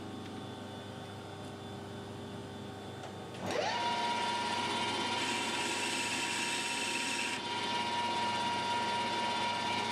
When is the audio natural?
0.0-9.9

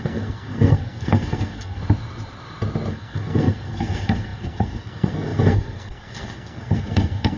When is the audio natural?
1.8-2.9

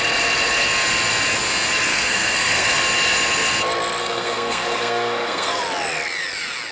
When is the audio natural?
0.0-1.9; 2.8-4.0; 5.6-6.7

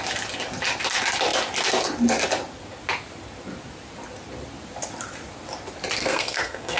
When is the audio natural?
0.0-6.0

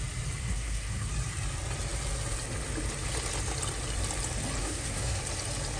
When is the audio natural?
0.0-0.4; 1.1-4.6; 5.2-5.8

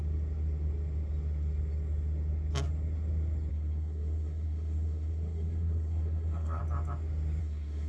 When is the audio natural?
0.0-3.5; 6.6-7.4

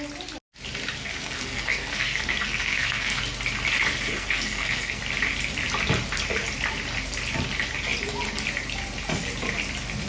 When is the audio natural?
0.0-1.0; 3.2-4.1; 5.0-10.1